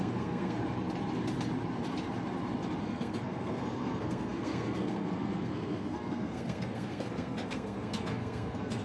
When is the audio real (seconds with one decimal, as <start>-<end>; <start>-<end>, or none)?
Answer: 0.6-2.8